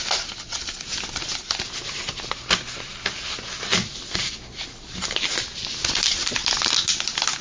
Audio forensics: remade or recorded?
recorded